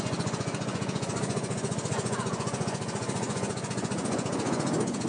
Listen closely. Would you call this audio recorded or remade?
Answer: remade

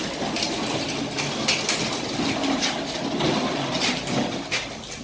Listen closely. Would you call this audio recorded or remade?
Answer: recorded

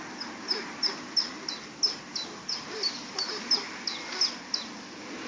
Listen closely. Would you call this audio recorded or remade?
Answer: recorded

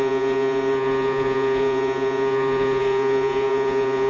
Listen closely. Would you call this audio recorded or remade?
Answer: remade